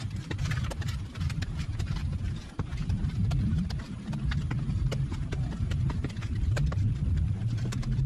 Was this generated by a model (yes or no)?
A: yes